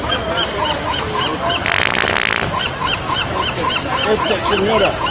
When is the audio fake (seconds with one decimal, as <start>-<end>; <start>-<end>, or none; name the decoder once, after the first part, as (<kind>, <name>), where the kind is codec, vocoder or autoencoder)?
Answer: 0.0-5.1 (vocoder, BigVGAN v2)